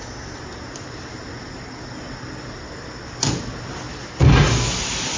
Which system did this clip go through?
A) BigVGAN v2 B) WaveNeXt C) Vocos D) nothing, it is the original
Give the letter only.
D